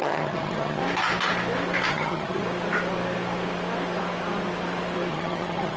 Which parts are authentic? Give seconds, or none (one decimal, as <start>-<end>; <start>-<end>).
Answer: 0.8-1.9; 2.4-5.1